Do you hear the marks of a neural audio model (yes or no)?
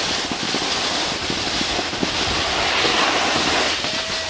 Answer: no